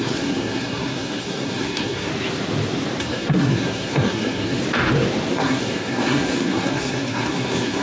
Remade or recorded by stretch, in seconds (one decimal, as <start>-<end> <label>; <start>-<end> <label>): 0.0-2.1 remade; 2.1-3.0 recorded; 3.0-4.6 remade; 4.6-5.3 recorded; 5.3-7.8 remade